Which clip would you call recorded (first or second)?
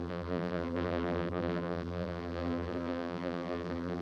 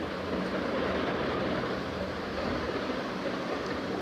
second